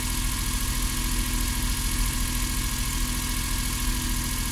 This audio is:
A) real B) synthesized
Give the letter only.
A